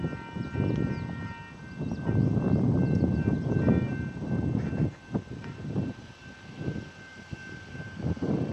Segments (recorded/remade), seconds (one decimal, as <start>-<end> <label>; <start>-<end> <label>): 0.0-8.5 recorded